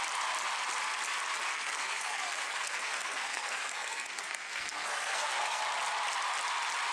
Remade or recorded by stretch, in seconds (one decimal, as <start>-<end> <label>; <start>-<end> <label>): 0.0-1.5 recorded; 1.5-5.6 remade; 5.6-6.9 recorded